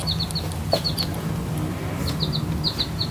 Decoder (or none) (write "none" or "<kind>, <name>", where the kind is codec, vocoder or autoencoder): none